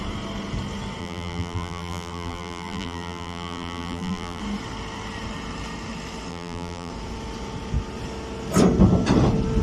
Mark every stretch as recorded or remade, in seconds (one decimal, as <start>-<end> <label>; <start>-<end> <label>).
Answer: 0.0-1.0 recorded; 1.0-4.4 remade; 4.4-6.3 recorded; 6.3-6.9 remade; 6.9-9.6 recorded